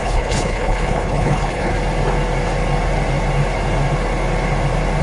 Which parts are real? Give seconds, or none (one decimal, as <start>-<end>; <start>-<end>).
1.7-5.0